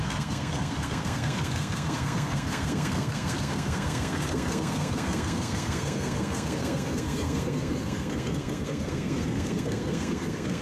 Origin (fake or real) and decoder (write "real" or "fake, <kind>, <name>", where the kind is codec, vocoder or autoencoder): fake, codec, SNAC